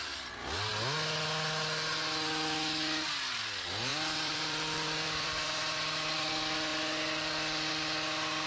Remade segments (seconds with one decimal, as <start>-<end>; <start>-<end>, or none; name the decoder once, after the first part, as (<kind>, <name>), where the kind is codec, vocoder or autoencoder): 3.9-6.3 (vocoder, BigVGAN v2)